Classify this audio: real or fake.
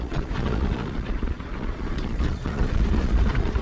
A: fake